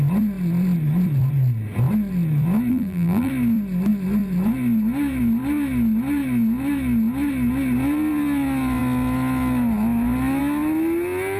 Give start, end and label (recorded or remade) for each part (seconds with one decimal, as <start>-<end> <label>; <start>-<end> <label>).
0.0-2.7 recorded; 2.7-3.3 remade; 3.3-11.4 recorded